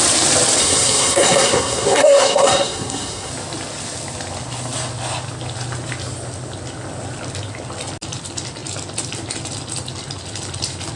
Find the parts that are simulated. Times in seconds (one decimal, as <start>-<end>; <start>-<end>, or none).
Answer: 0.6-3.3